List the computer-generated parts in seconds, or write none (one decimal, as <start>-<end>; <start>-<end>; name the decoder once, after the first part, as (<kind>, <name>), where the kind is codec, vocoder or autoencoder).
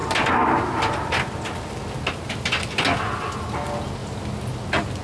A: none